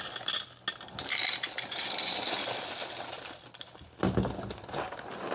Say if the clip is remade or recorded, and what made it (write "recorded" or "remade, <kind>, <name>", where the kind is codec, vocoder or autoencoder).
recorded